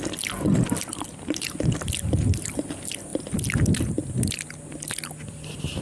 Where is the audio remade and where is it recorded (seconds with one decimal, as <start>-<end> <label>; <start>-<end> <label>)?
0.0-5.8 recorded